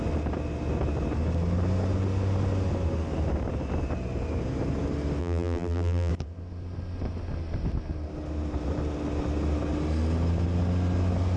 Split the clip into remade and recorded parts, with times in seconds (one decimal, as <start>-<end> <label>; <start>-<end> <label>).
0.0-5.2 recorded; 5.2-6.1 remade; 6.1-11.4 recorded